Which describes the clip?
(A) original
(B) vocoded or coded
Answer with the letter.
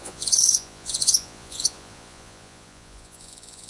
B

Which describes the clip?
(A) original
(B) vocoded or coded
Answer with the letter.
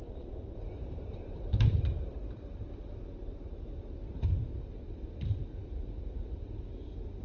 B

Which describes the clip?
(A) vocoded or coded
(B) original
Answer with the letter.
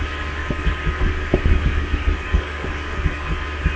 A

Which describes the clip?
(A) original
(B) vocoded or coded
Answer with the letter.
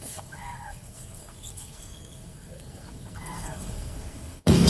B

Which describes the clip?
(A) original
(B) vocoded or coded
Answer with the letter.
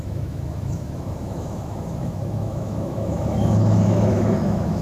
B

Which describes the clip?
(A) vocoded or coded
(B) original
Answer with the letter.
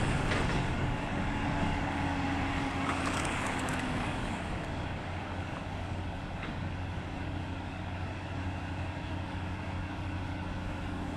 A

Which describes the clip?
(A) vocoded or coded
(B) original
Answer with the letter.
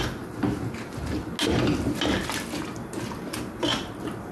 B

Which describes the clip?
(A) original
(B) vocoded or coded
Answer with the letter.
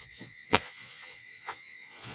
B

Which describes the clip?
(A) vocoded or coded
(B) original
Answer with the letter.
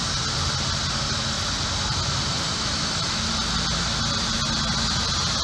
B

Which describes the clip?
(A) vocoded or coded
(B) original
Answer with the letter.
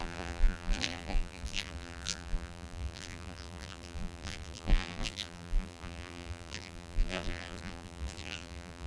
A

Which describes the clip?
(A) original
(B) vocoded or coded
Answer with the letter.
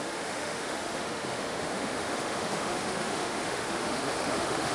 B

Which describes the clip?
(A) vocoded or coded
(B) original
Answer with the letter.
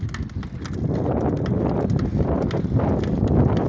B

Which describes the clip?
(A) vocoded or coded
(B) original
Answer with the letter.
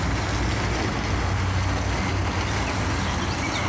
B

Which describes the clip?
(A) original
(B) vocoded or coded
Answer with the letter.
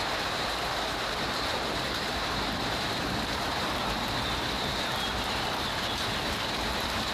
B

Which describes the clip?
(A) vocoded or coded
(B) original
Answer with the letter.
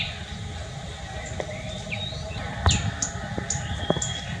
B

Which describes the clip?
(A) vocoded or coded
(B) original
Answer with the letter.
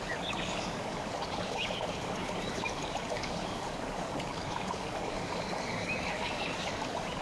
A